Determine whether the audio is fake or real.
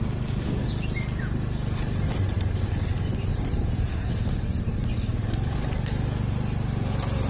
real